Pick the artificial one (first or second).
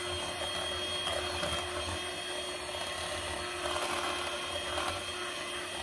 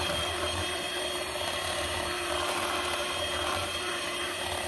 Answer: second